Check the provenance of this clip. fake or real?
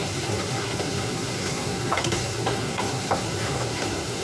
fake